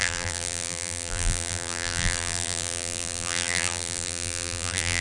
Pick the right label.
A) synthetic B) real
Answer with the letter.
A